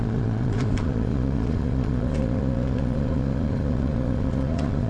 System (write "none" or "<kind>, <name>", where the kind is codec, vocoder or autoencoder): vocoder, Vocos